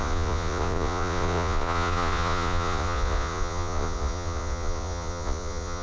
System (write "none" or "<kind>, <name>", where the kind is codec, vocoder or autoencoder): vocoder, Vocos